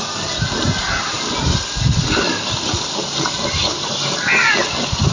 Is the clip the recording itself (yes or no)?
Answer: yes